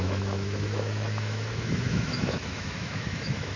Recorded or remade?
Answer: remade